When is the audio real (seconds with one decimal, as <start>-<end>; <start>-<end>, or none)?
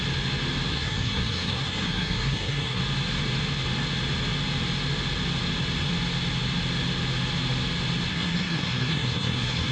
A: 0.0-0.7; 2.8-8.1